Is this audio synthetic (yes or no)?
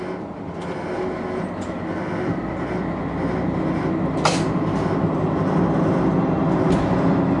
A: no